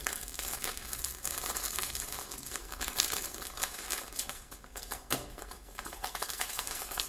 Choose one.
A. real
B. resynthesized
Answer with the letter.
B